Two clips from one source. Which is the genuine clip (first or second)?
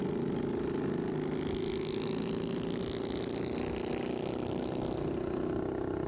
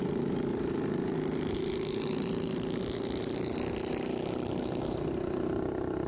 first